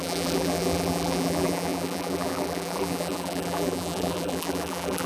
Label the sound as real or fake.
fake